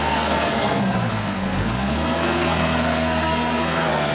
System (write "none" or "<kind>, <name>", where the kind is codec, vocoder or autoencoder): codec, SNAC